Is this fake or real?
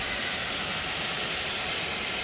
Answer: real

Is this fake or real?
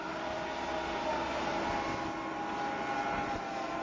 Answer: real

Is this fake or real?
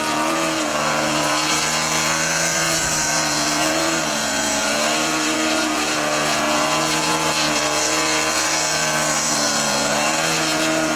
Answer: fake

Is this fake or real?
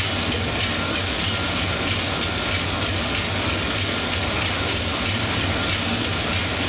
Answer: real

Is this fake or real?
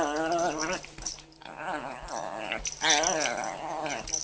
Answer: real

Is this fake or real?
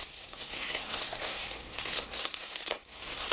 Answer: fake